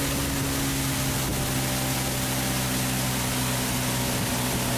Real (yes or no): yes